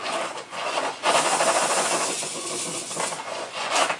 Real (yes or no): no